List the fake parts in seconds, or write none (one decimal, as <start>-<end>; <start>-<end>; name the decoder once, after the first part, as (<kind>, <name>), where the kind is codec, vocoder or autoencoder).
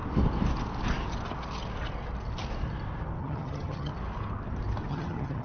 3.2-3.9 (vocoder, HiFi-GAN); 4.9-5.4